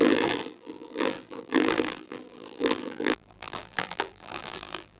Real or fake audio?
fake